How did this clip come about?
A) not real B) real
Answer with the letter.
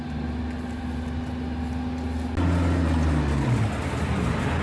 B